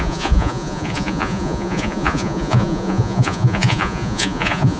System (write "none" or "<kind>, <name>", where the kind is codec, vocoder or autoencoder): vocoder, Vocos